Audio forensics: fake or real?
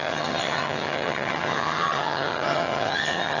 fake